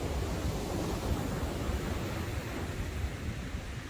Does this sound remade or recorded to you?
recorded